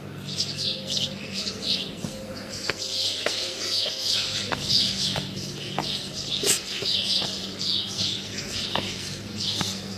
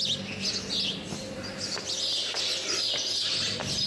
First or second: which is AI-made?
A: first